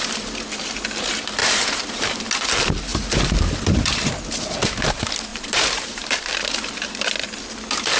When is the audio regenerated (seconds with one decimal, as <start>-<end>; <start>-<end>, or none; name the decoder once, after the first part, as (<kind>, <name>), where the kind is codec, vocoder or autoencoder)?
1.4-2.3 (vocoder, BigVGAN v2); 2.9-4.1; 5.3-6.3